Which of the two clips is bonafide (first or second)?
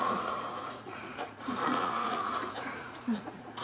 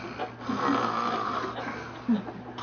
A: second